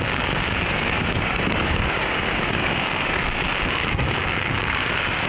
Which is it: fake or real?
fake